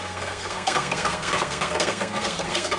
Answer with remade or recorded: remade